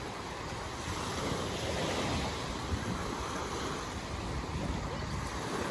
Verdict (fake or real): real